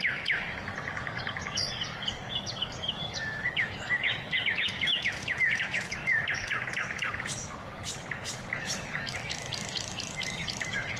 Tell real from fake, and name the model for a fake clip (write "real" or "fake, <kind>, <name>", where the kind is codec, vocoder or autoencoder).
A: fake, codec, DAC